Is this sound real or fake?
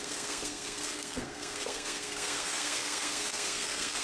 fake